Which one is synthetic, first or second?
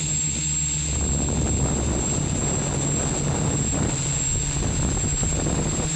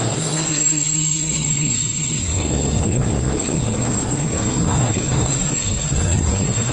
second